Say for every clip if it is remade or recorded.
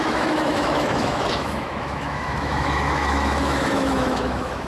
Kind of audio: remade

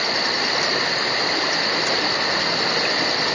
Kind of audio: recorded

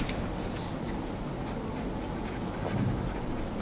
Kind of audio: recorded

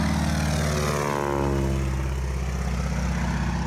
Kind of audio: recorded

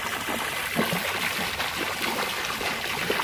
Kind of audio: recorded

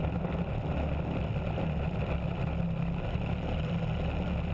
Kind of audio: recorded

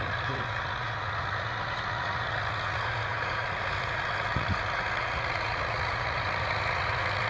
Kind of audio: remade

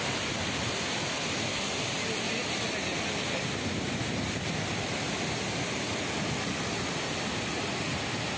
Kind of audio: recorded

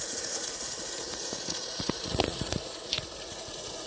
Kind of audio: remade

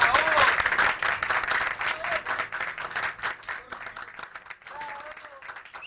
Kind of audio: recorded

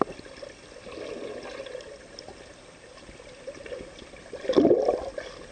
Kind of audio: recorded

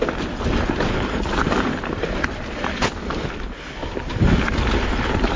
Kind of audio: recorded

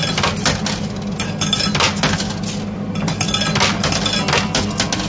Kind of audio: recorded